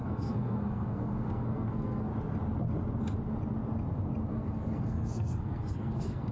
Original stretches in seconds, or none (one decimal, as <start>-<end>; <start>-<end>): 2.1-4.3